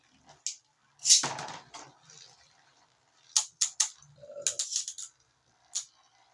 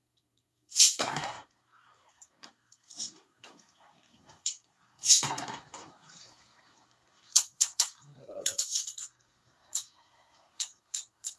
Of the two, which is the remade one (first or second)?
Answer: second